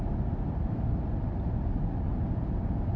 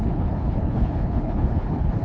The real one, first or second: first